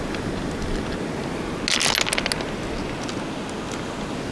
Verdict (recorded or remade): recorded